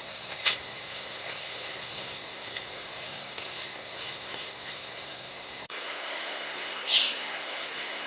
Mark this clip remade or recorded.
remade